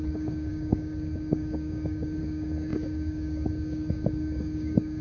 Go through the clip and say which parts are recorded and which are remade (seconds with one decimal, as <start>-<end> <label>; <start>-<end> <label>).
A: 0.0-5.0 remade